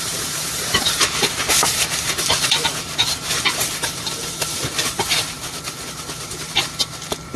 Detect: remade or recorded remade